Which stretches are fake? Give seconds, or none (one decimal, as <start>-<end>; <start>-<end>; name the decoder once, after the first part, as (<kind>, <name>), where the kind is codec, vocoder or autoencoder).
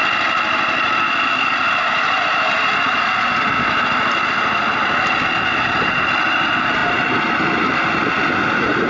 none